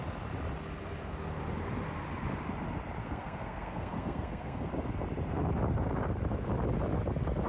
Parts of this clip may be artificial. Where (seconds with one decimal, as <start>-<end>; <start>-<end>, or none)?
3.0-4.7